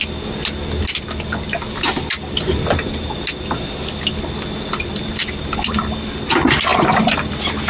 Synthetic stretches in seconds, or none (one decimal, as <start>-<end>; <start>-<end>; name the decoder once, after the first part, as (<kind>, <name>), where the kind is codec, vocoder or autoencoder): none